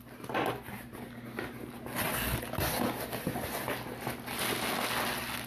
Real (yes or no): yes